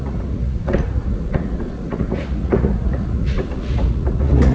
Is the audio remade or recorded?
remade